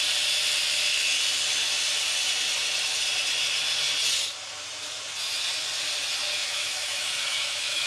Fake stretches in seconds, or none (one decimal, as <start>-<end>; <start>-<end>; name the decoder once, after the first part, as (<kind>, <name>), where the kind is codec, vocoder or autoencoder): 6.4-7.9 (autoencoder, DAC-VAE)